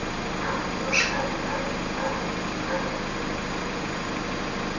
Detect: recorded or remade recorded